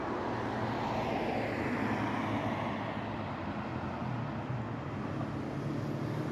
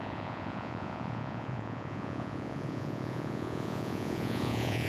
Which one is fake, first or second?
second